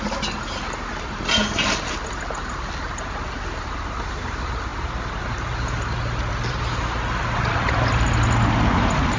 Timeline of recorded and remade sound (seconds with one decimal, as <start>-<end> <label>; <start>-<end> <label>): 0.0-9.2 recorded